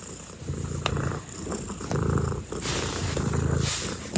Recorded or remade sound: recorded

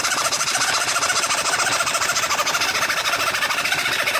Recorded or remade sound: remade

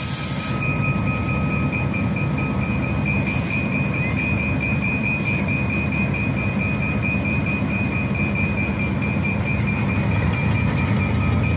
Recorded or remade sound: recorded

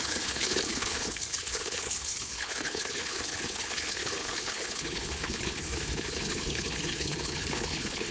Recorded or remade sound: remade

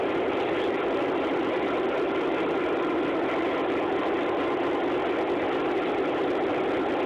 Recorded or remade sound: recorded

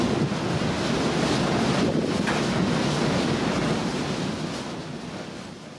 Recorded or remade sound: recorded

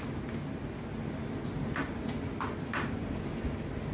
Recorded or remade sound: recorded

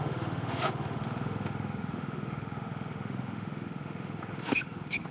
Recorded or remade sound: remade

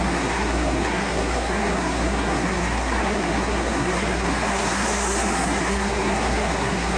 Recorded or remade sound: remade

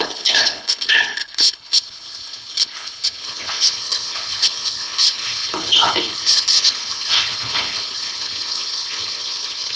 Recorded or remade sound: remade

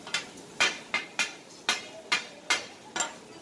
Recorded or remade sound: recorded